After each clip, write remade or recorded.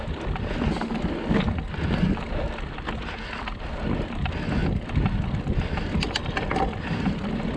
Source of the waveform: recorded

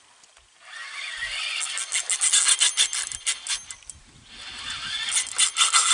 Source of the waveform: recorded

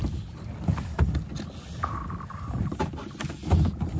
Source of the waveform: recorded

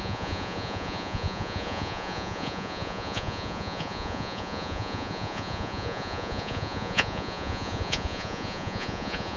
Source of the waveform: remade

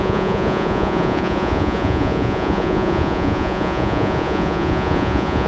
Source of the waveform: remade